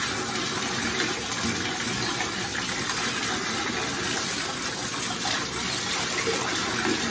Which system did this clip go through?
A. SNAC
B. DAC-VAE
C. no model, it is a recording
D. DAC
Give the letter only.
C